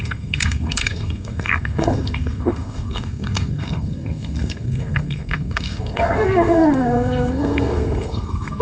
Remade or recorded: remade